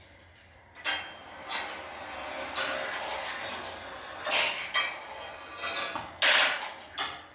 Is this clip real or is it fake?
real